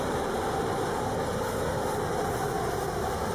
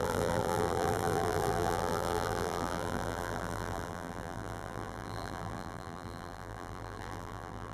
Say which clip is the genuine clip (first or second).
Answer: first